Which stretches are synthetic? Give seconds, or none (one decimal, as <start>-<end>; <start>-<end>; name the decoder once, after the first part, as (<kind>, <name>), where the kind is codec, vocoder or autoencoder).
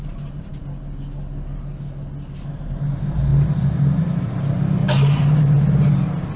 0.0-0.6 (vocoder, BigVGAN v2); 4.8-5.9